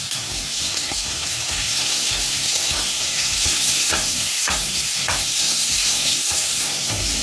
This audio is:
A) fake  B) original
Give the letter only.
A